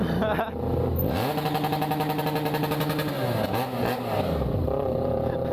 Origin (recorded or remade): recorded